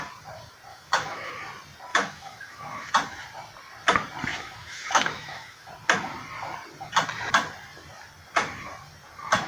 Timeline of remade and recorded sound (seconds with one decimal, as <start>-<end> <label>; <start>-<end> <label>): 0.0-0.7 recorded; 0.7-1.3 remade; 1.3-1.9 recorded; 1.9-2.9 remade; 2.9-4.3 recorded; 4.3-5.7 remade; 5.7-9.5 recorded